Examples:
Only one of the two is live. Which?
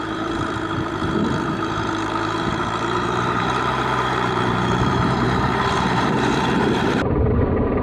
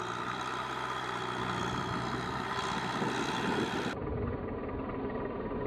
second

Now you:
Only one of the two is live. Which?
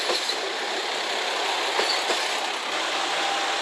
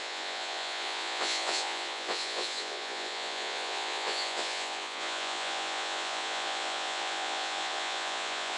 first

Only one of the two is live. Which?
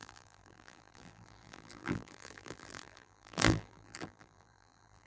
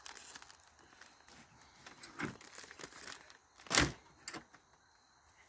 second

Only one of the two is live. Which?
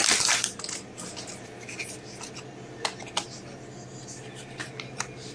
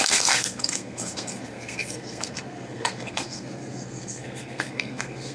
first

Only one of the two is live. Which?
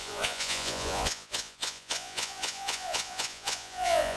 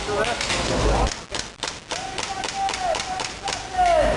second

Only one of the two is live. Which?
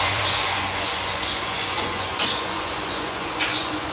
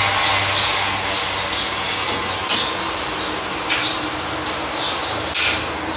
second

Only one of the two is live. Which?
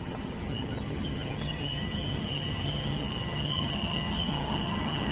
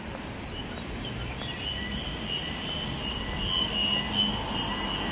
second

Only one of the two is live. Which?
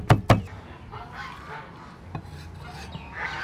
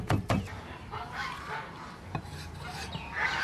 first